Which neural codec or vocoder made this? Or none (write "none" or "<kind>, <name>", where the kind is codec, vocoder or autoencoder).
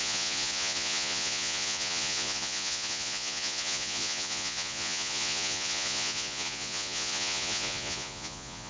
vocoder, Vocos